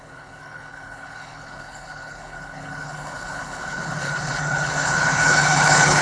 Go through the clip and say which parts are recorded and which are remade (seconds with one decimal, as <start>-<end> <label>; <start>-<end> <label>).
0.0-6.0 remade

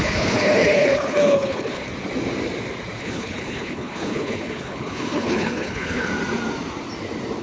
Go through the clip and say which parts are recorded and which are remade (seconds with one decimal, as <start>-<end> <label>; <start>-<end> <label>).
0.0-1.9 remade; 1.9-3.0 recorded; 3.0-6.1 remade; 6.1-7.4 recorded

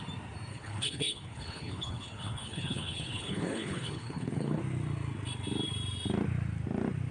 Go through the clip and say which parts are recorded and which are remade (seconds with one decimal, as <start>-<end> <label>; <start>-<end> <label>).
0.0-0.5 recorded; 0.5-4.6 remade; 4.6-7.1 recorded

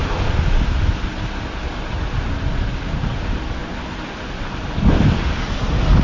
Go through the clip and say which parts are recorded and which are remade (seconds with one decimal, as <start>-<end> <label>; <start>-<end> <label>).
0.0-6.0 recorded

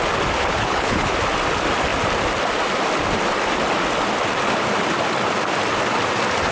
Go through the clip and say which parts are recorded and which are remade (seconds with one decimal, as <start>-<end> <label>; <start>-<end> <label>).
0.0-0.4 recorded; 0.4-1.1 remade; 1.1-6.5 recorded